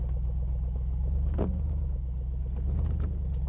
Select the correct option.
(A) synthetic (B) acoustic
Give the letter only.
B